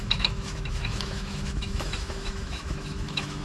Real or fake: fake